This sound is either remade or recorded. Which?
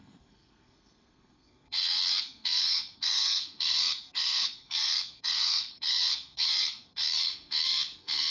remade